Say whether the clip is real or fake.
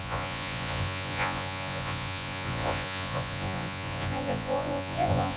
fake